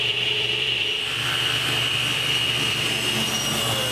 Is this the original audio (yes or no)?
no